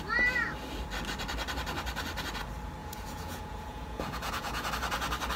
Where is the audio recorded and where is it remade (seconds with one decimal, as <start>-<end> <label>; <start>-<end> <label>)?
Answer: 0.0-2.8 recorded; 2.8-4.7 remade; 4.7-5.4 recorded